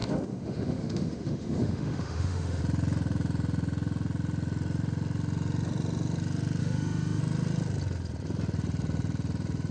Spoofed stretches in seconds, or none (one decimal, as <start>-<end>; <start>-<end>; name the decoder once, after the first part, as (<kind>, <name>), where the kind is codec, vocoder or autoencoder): 0.0-2.6 (autoencoder, DAC-VAE); 6.6-7.2